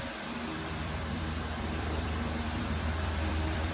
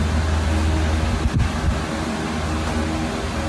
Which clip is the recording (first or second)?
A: second